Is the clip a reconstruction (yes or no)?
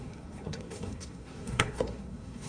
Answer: yes